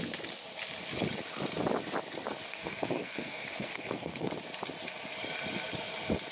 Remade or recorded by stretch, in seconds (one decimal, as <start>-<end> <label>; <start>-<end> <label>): 0.0-2.5 recorded; 2.5-4.3 remade; 4.3-6.3 recorded

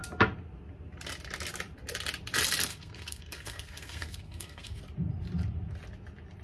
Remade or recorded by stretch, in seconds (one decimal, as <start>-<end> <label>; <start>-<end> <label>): 0.0-2.7 recorded; 2.7-4.8 remade; 4.8-6.4 recorded

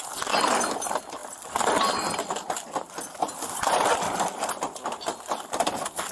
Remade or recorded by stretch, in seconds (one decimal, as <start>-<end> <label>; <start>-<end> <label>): 0.0-6.1 recorded

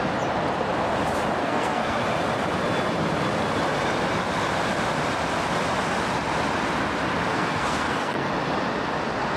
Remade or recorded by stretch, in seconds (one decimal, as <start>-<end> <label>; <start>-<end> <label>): 0.0-1.4 recorded; 1.4-2.0 remade; 2.0-7.3 recorded; 7.3-8.3 remade; 8.3-9.4 recorded

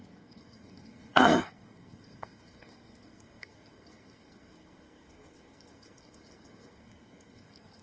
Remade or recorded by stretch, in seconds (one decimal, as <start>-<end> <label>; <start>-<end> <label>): 0.0-7.8 remade

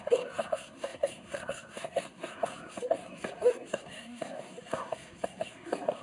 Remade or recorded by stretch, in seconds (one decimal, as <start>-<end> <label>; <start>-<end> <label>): 0.0-6.0 remade

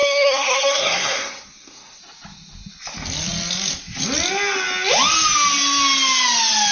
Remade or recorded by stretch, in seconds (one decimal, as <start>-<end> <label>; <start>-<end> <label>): 0.0-2.0 remade; 2.0-6.7 recorded